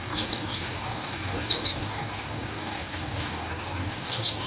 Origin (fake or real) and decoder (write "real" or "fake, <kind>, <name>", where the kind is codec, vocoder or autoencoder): fake, codec, DAC